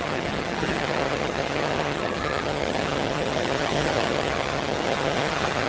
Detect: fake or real fake